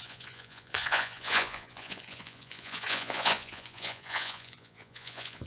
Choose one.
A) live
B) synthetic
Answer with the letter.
B